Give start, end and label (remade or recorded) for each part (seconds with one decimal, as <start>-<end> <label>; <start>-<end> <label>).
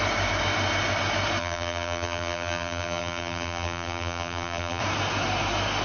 0.0-1.4 recorded; 1.4-4.8 remade; 4.8-5.8 recorded